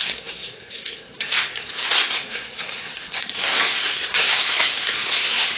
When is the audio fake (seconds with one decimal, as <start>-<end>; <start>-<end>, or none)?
0.0-5.6